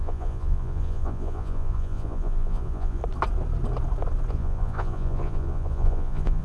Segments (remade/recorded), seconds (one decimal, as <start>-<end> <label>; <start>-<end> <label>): 0.0-3.0 remade; 3.0-4.3 recorded; 4.3-6.4 remade